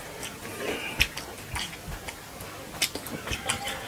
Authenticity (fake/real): real